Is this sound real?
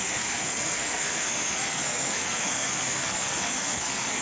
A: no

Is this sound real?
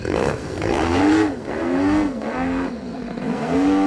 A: no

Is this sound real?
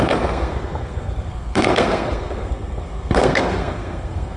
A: no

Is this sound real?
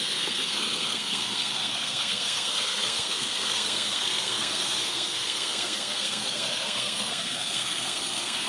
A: no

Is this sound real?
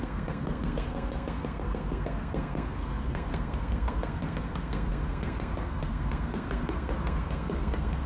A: no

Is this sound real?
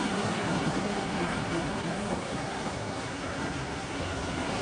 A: no